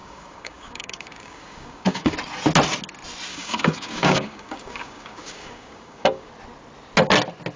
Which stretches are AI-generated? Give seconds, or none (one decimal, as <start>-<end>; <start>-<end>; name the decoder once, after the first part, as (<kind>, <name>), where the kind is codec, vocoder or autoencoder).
0.0-2.1 (codec, DAC); 3.3-6.3